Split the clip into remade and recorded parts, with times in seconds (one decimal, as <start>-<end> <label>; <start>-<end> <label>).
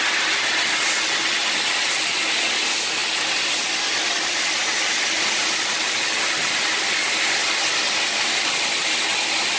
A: 0.0-9.6 recorded